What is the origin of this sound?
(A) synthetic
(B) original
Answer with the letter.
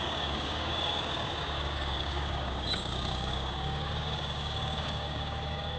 A